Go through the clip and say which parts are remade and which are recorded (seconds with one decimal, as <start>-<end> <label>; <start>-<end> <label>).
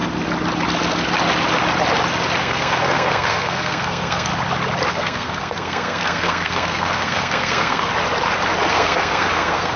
0.0-2.4 recorded; 2.4-4.3 remade; 4.3-4.9 recorded; 4.9-7.9 remade; 7.9-8.7 recorded; 8.7-9.8 remade